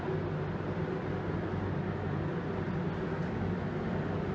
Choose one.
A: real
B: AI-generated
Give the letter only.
A